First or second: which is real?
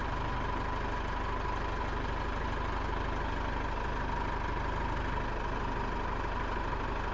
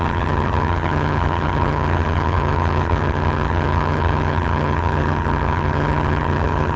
first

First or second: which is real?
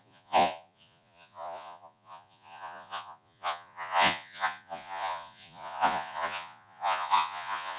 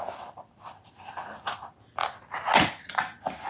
second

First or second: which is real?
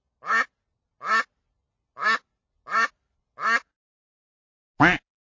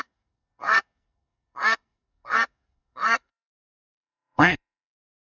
first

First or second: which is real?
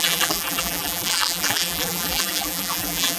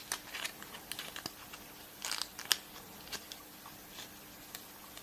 second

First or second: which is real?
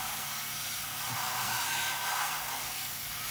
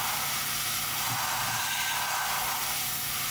second